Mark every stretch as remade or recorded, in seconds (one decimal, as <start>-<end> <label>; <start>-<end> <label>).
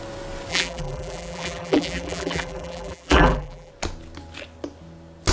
0.0-0.5 recorded; 0.5-3.7 remade; 3.7-5.3 recorded